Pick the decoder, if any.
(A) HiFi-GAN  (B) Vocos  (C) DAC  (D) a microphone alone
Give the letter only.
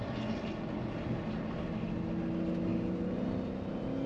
D